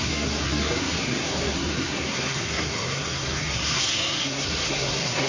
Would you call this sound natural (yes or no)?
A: no